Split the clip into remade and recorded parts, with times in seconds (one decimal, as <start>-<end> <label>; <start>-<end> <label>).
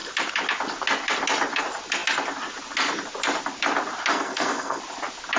0.0-4.1 recorded; 4.1-4.8 remade; 4.8-5.4 recorded